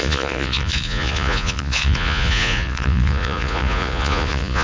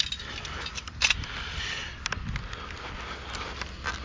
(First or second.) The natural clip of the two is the second